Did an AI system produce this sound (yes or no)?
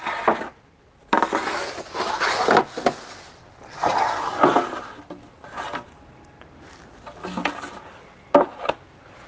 no